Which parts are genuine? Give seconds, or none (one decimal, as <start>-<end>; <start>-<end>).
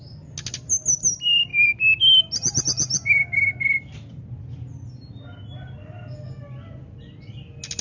0.0-7.8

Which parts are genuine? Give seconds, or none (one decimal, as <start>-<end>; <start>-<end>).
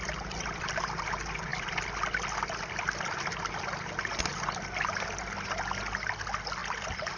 0.0-7.2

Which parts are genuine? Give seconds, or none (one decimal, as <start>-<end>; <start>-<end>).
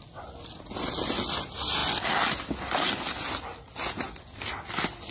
0.0-5.1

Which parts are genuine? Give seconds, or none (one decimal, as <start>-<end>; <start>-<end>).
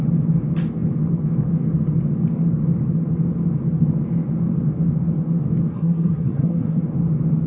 0.0-5.7; 6.8-7.5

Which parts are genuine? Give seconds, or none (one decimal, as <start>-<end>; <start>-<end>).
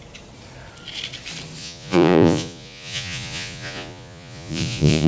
0.0-1.6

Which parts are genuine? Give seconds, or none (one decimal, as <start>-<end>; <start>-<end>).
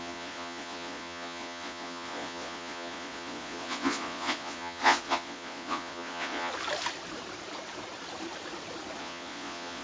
6.5-9.0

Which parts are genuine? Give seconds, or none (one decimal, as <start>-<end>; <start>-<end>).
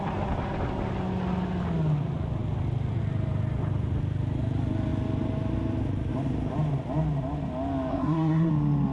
0.0-7.9; 8.5-8.9